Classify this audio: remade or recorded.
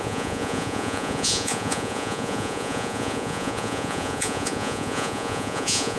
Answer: remade